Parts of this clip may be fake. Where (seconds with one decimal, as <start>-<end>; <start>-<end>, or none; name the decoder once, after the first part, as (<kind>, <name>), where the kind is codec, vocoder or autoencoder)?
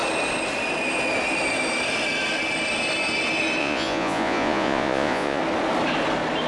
3.6-5.4 (vocoder, Vocos)